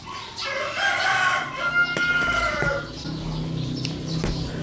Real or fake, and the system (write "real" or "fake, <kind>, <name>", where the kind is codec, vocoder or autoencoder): real